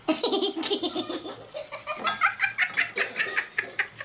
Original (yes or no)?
yes